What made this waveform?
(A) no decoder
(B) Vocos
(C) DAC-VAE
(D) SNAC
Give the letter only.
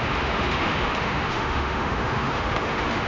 C